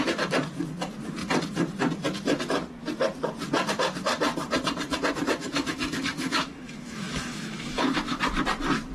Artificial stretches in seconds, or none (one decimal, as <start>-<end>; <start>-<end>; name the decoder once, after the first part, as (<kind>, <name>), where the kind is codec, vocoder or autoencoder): 5.4-8.2 (autoencoder, DAC-VAE)